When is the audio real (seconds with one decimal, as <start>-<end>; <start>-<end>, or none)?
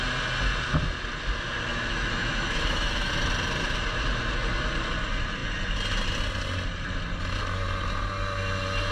0.0-1.7; 3.1-8.9